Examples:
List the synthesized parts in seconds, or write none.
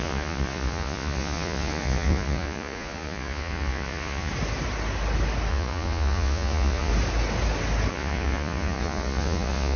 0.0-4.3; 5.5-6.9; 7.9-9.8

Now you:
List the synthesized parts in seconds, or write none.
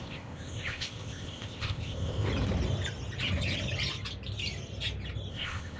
0.0-2.3; 5.3-5.8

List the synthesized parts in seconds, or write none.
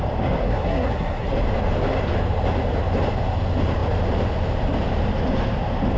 0.4-1.3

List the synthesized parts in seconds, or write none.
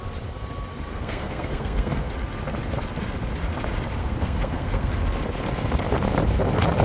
0.9-2.1; 4.0-4.9